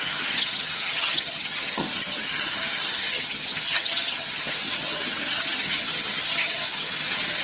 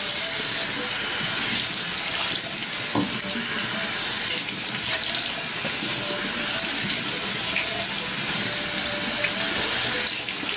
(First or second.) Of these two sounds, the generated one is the first